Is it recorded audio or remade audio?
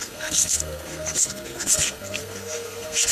remade